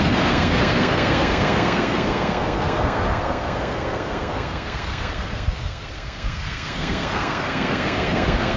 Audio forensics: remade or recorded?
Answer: remade